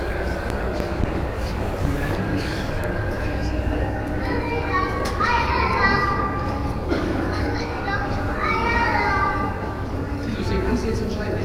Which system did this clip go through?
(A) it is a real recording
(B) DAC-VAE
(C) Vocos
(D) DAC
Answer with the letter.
D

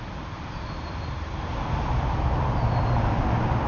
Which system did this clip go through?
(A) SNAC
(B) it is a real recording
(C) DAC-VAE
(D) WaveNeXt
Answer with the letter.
B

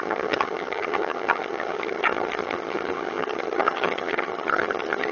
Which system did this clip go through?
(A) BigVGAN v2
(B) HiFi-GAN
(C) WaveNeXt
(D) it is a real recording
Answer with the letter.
B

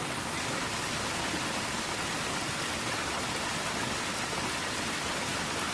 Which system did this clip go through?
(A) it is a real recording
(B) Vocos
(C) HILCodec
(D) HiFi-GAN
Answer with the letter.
A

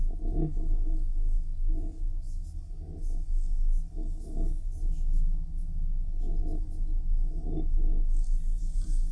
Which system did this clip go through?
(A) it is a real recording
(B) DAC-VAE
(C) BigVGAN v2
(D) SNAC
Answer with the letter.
A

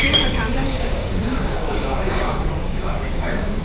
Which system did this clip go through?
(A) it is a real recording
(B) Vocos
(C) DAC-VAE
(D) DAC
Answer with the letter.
D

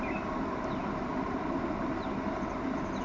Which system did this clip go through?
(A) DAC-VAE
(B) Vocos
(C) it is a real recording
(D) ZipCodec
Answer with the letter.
C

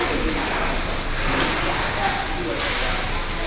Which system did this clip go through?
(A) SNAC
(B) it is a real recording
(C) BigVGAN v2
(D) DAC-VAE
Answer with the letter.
B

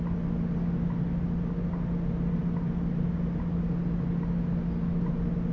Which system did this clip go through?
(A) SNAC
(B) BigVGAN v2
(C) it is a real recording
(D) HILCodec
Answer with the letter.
C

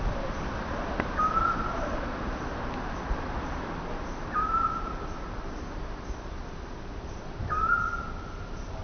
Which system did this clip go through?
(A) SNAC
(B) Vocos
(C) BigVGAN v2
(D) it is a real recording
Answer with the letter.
C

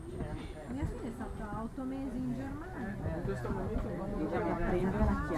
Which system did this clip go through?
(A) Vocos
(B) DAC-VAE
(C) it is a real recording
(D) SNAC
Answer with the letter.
C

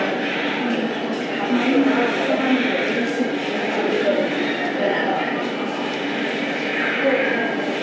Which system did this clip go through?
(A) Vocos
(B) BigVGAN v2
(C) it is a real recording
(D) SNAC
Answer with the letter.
C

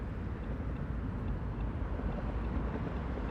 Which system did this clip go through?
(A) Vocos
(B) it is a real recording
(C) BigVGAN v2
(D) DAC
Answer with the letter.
B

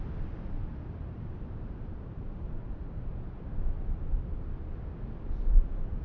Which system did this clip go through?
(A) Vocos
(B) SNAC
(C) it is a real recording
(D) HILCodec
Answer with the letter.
C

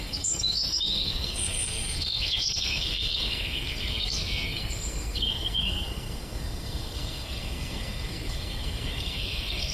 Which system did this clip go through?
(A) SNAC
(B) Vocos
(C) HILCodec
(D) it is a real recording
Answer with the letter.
A